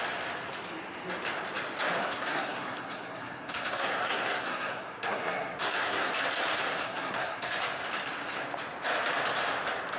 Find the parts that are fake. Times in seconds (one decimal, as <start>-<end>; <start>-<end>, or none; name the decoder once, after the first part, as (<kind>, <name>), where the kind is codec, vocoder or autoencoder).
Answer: 2.0-6.1 (codec, SNAC); 6.6-7.5